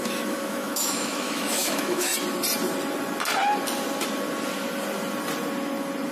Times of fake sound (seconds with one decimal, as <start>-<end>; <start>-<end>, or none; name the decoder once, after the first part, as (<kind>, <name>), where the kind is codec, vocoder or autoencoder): 0.0-2.1 (autoencoder, DAC-VAE)